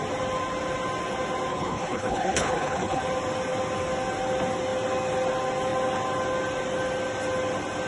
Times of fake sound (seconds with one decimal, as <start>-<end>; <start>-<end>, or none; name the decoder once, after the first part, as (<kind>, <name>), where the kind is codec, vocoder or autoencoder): 1.5-3.0 (codec, HILCodec)